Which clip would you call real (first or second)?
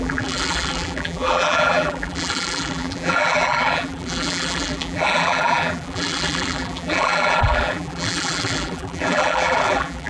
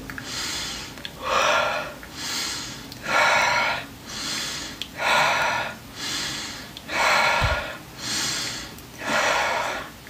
second